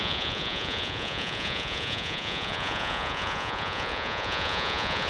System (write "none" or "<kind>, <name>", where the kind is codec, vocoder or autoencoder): vocoder, Vocos